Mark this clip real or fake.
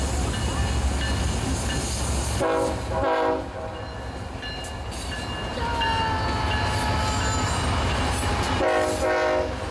real